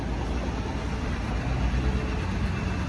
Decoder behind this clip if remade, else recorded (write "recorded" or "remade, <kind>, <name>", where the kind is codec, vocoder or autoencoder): recorded